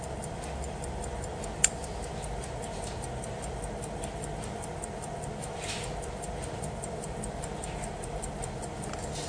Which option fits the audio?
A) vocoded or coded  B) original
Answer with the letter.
B